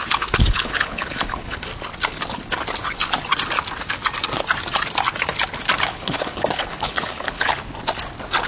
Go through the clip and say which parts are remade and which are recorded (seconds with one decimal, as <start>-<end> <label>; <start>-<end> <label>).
0.0-1.7 remade; 1.7-5.8 recorded; 5.8-7.5 remade; 7.5-8.5 recorded